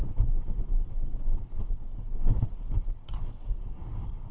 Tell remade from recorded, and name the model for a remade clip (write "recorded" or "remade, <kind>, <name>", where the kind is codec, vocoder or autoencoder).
recorded